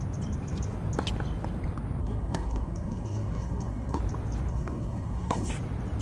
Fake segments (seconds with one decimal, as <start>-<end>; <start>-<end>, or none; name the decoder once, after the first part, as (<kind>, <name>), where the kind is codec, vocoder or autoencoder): 2.0-4.0 (codec, SNAC); 4.5-5.5